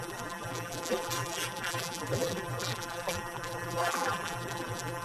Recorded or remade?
remade